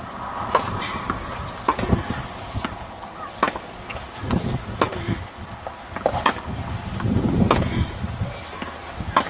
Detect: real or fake real